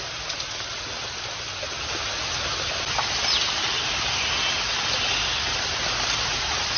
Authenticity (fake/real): real